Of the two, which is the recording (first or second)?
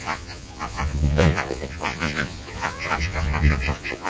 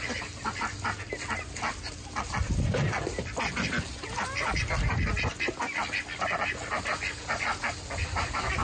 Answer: second